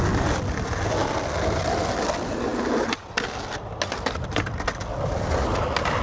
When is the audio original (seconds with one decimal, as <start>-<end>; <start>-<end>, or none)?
0.0-6.0